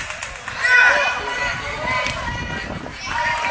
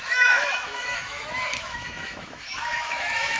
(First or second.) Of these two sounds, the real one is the first